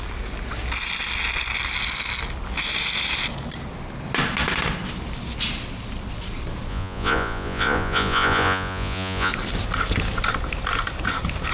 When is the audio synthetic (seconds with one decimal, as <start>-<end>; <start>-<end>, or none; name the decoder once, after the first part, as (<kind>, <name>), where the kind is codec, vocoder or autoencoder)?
6.7-9.3 (vocoder, Vocos)